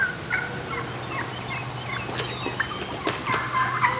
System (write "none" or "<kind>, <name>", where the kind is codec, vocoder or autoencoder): none